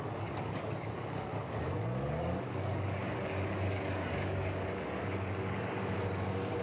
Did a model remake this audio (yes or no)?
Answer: yes